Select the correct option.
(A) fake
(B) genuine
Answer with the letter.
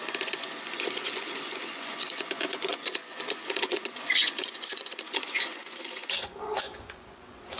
A